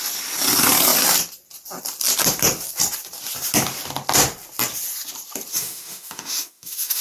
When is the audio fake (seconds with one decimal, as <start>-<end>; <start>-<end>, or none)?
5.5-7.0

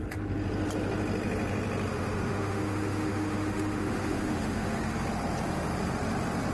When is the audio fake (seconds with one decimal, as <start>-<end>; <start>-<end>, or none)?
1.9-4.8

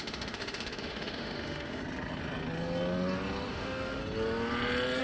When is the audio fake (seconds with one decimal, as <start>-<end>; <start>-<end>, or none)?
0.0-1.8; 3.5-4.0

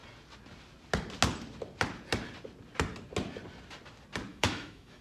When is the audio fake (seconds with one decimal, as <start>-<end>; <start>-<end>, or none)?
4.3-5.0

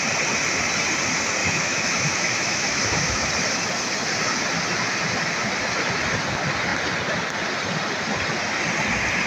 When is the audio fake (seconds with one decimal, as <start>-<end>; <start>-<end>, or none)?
1.4-3.3

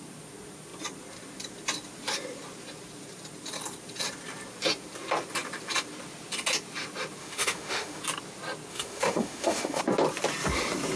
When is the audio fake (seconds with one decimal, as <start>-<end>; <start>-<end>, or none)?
7.2-8.0; 8.7-9.8